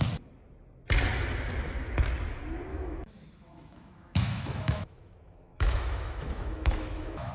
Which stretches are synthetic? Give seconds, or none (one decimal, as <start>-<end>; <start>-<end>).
2.7-7.3